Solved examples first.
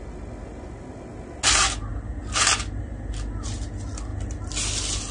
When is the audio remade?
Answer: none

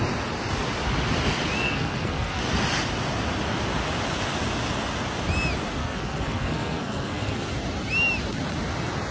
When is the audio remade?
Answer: 1.6-2.4 (codec, SNAC); 5.8-7.5

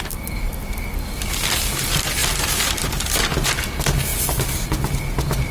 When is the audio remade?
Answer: none

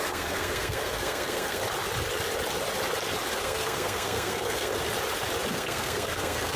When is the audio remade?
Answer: 0.0-1.6 (codec, SNAC); 3.4-4.7; 5.5-6.6

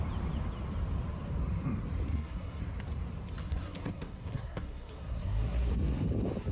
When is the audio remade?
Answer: 2.1-2.6 (codec, SNAC); 3.4-5.7

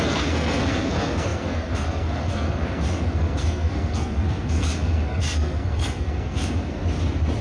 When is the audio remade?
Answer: 0.0-6.8 (codec, SNAC)